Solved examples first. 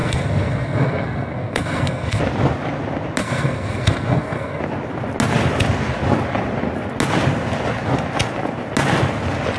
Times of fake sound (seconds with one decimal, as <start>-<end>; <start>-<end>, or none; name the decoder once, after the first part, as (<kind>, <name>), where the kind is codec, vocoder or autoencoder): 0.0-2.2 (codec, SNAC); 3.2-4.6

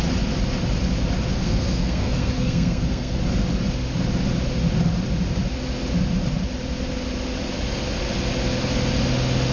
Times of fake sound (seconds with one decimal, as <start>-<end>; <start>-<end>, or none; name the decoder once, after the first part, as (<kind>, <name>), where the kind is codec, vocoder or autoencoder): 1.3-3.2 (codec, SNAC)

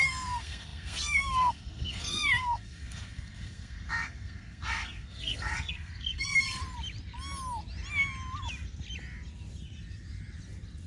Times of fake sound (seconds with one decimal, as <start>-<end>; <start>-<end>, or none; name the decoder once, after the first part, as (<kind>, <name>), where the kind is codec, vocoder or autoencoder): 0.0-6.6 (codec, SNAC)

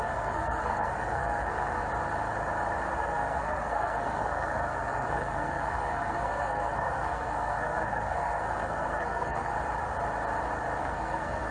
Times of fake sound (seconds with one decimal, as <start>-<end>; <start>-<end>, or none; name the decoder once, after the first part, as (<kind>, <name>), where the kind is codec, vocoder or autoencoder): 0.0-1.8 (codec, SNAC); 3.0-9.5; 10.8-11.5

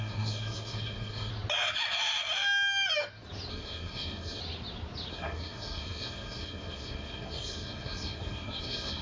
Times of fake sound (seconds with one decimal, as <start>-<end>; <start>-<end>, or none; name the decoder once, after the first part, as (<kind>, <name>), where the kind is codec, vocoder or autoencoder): 0.0-1.3 (codec, SNAC); 3.5-4.4; 5.1-9.0